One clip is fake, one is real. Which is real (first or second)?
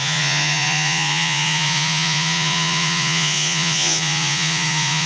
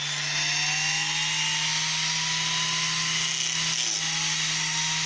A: second